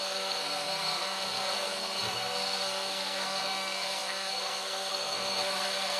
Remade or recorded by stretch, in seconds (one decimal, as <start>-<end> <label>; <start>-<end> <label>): 0.0-6.0 remade